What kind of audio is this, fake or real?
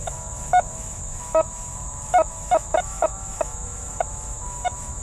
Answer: fake